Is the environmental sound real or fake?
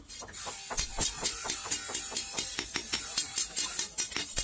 real